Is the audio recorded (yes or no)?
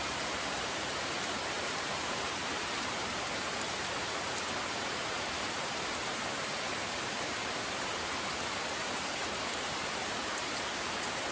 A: no